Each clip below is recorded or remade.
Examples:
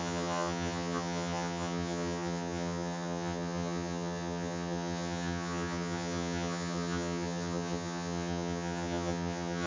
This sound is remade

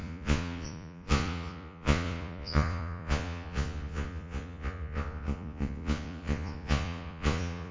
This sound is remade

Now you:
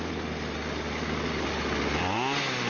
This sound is recorded